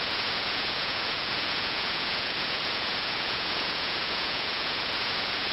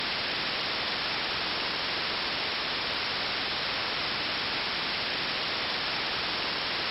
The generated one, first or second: first